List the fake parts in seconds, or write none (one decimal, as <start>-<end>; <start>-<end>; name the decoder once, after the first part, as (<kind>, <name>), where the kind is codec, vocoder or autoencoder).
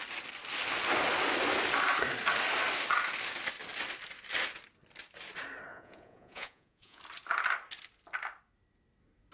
5.7-7.0 (vocoder, Vocos)